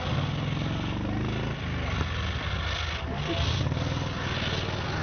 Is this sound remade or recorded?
recorded